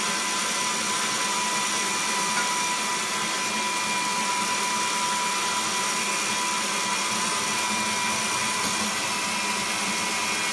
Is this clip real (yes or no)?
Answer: yes